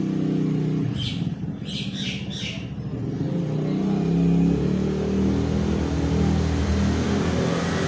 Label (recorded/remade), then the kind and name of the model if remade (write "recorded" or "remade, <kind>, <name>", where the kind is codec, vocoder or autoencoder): recorded